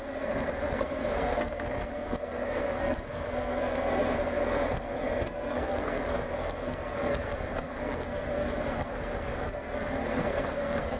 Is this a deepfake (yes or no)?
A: yes